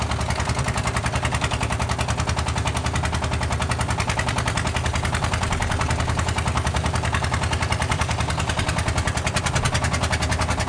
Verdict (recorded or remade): recorded